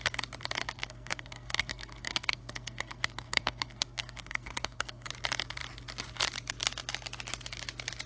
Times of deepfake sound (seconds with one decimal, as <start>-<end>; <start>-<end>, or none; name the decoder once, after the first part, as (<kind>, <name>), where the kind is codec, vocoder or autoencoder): 0.6-5.1 (codec, SNAC)

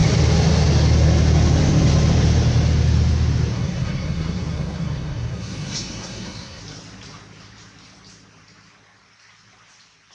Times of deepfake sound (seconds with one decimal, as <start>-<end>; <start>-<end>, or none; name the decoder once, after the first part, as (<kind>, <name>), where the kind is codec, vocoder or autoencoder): 3.5-6.6 (codec, SNAC)

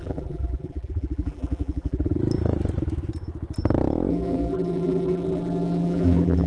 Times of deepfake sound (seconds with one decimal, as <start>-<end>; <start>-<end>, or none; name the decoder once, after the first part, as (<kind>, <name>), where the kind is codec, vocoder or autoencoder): 0.0-2.2 (vocoder, BigVGAN v2); 4.1-6.5

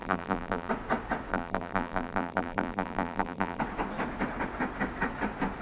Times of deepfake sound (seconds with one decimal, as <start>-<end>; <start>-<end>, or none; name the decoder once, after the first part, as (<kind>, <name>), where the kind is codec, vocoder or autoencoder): 0.0-0.7 (vocoder, BigVGAN v2); 1.3-3.6

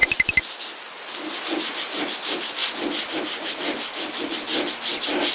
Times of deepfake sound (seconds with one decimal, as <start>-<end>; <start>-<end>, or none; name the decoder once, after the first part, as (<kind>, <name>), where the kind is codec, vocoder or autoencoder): none